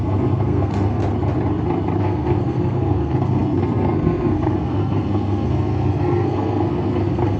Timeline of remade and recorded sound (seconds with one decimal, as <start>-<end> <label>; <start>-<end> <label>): 0.0-1.0 remade; 1.0-2.0 recorded; 2.0-7.4 remade